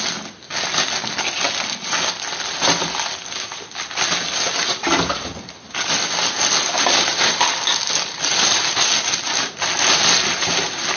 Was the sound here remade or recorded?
recorded